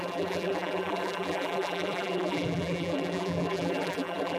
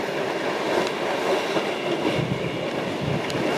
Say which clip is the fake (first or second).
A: first